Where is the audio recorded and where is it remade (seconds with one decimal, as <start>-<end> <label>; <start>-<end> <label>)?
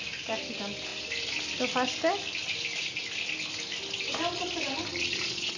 0.0-4.9 recorded; 4.9-5.6 remade